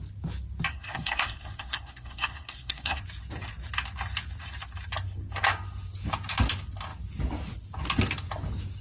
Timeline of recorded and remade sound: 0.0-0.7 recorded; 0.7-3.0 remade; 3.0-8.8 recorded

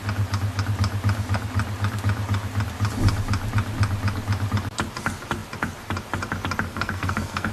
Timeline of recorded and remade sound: 0.0-6.7 recorded; 6.7-7.5 remade